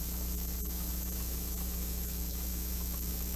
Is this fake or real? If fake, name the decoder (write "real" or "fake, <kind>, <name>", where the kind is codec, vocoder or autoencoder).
fake, autoencoder, DAC-VAE